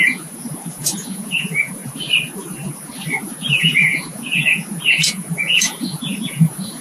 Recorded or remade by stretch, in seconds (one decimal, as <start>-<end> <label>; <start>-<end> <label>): 0.0-1.8 remade; 1.8-3.2 recorded; 3.2-6.8 remade